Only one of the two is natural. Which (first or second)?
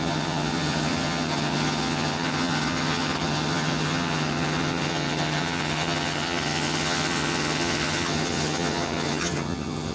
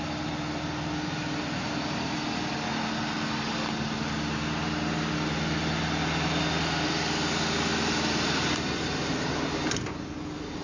second